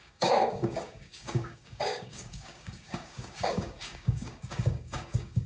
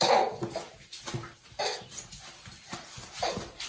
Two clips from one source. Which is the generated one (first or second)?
first